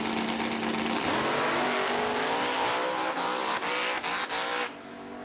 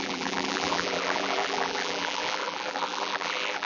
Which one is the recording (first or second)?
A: first